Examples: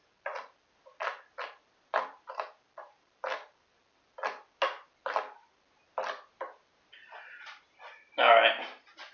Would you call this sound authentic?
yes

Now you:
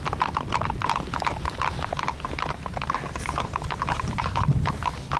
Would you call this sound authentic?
yes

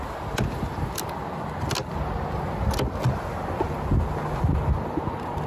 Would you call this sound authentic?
yes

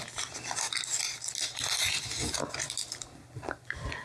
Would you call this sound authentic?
yes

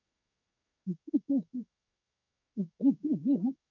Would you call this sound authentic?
no